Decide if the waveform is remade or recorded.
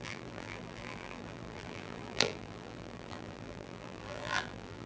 remade